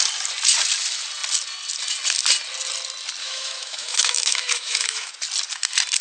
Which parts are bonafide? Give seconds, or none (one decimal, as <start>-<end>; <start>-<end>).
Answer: 0.0-3.2; 5.1-6.0